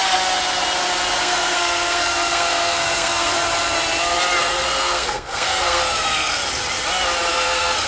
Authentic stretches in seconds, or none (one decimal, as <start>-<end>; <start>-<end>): 0.0-1.2; 3.3-4.4; 6.4-7.3